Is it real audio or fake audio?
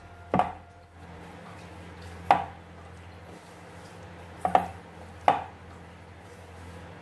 real